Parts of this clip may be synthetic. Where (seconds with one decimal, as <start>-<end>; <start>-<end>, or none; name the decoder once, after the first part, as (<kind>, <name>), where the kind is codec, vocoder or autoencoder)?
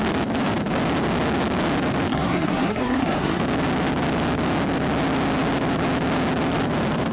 2.1-3.4 (codec, SNAC)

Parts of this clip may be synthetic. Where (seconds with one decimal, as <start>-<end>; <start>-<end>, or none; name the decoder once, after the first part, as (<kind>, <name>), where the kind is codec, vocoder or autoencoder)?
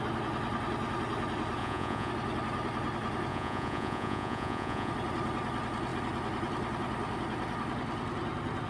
1.6-2.1 (vocoder, Vocos); 3.3-4.9